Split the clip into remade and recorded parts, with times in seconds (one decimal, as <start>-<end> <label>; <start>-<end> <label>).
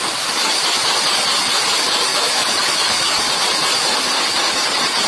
0.0-2.1 recorded; 2.1-3.2 remade; 3.2-5.1 recorded